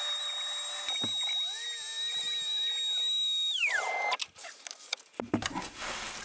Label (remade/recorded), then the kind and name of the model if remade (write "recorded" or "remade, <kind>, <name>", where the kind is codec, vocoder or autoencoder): recorded